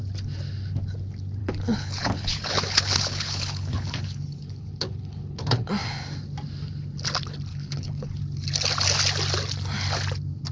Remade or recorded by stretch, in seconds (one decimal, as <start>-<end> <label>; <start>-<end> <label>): 0.0-1.4 recorded; 1.4-5.7 remade; 5.7-7.5 recorded; 7.5-8.2 remade; 8.2-10.5 recorded